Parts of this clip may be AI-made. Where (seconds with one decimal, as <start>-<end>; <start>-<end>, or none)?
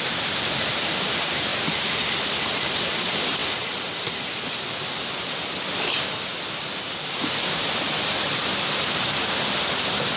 0.0-1.5; 2.1-6.3; 8.0-10.2